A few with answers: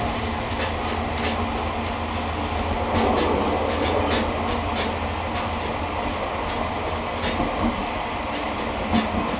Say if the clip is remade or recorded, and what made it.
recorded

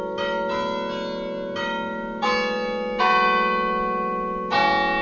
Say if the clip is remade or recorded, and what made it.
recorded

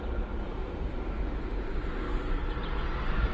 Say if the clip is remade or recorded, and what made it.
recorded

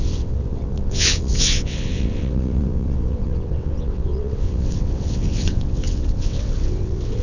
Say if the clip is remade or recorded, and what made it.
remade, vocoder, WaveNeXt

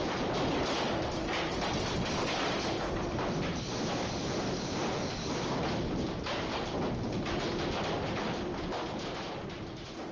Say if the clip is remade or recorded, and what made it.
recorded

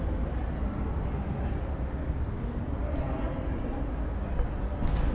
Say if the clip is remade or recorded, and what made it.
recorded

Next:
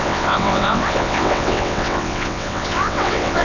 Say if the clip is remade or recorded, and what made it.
remade, vocoder, WaveNeXt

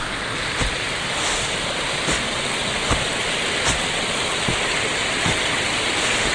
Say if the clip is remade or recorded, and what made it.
recorded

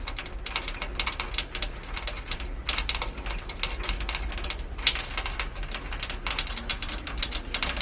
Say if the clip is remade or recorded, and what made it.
recorded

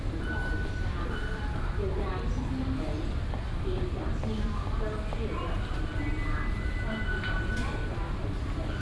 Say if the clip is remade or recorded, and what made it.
recorded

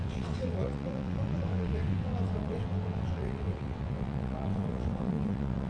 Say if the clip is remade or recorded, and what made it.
remade, vocoder, WaveNeXt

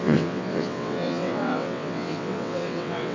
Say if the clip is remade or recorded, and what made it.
remade, vocoder, WaveNeXt